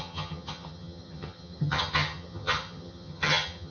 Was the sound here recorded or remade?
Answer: remade